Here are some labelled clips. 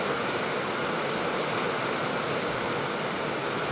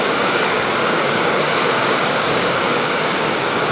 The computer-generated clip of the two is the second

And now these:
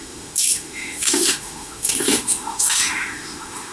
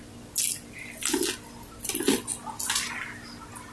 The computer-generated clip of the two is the first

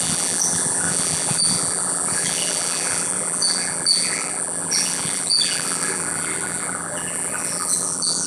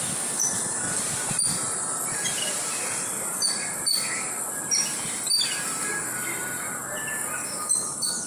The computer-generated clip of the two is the first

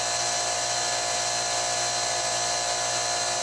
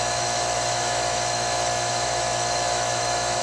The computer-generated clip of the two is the second